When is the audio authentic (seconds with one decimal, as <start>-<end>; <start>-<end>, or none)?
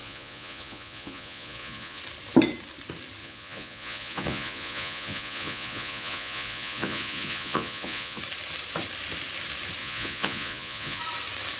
2.0-3.2; 8.2-9.8; 11.0-11.6